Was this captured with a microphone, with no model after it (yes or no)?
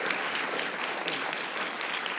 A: yes